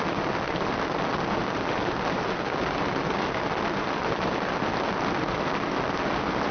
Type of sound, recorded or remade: recorded